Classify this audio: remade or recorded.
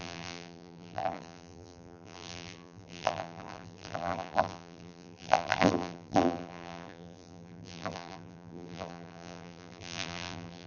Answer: remade